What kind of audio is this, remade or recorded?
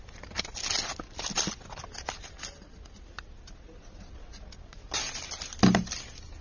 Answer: recorded